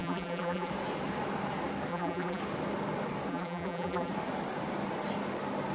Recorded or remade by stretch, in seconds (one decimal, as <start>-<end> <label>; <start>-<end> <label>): 0.0-0.7 remade; 0.7-1.9 recorded; 1.9-2.4 remade; 2.4-3.3 recorded; 3.3-4.1 remade; 4.1-5.7 recorded